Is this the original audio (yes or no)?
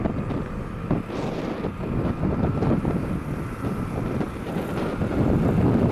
yes